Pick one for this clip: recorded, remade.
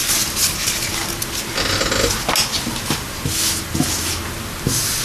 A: recorded